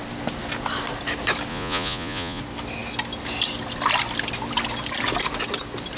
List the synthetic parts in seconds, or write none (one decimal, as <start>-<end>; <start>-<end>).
1.5-2.4